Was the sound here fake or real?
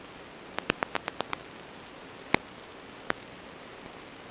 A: real